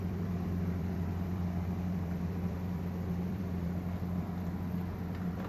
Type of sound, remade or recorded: remade